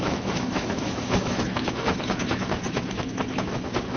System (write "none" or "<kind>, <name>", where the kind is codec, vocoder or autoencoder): autoencoder, DAC-VAE